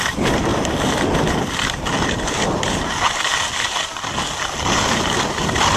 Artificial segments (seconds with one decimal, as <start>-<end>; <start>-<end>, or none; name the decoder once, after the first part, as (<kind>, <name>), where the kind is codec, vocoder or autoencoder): 0.5-2.8 (vocoder, BigVGAN v2); 3.3-4.2